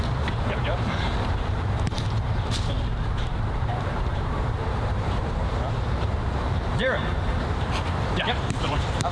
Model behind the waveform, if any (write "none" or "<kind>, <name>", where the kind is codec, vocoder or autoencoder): vocoder, BigVGAN v2